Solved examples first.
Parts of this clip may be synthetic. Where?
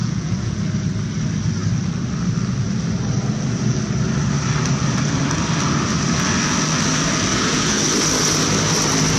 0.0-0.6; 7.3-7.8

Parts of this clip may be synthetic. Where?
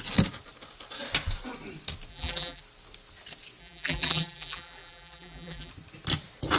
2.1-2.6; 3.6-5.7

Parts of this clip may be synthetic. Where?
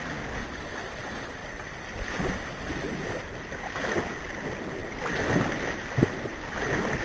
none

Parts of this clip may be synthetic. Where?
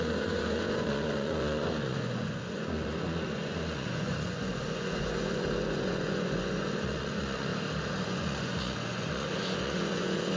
0.0-7.5; 8.0-10.4